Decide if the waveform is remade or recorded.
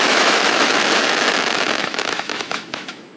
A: remade